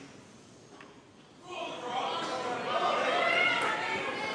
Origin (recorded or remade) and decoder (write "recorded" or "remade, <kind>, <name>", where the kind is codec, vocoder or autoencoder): recorded